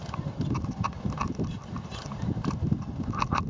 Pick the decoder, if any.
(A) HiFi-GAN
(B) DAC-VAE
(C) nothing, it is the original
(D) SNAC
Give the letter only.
C